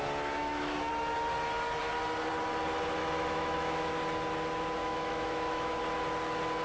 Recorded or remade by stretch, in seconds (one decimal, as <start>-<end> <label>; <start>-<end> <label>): 0.0-0.4 recorded; 0.4-0.9 remade; 0.9-3.0 recorded; 3.0-4.0 remade; 4.0-4.8 recorded; 4.8-5.8 remade; 5.8-6.6 recorded

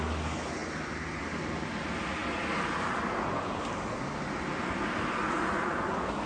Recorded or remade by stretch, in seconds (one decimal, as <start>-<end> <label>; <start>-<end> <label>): 0.0-6.3 recorded

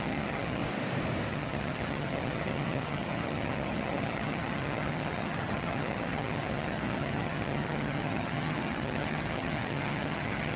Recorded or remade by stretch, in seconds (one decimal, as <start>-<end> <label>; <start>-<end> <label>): 0.0-0.6 remade; 0.6-1.3 recorded; 1.3-10.6 remade

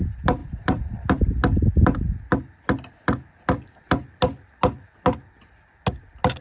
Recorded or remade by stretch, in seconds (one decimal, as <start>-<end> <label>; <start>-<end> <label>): 0.0-0.4 recorded; 0.4-1.2 remade; 1.2-6.4 recorded

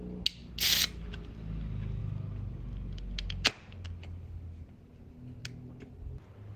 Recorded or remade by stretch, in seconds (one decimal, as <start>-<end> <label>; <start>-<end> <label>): 0.0-6.6 recorded

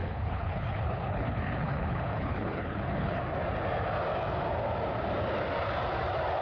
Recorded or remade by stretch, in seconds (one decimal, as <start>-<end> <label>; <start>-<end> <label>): 0.0-3.2 remade; 3.2-6.4 recorded